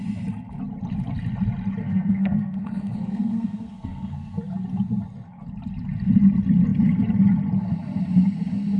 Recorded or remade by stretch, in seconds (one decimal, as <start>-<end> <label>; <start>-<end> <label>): 0.0-1.8 recorded; 1.8-4.4 remade; 4.4-8.8 recorded